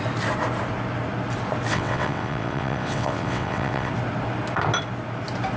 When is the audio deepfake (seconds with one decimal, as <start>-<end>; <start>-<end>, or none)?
1.7-3.9